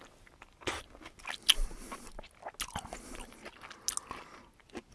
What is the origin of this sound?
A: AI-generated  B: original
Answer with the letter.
B